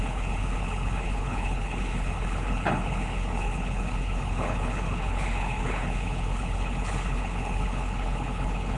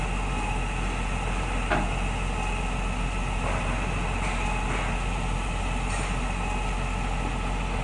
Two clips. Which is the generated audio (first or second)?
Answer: first